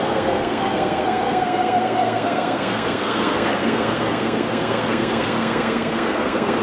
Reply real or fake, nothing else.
fake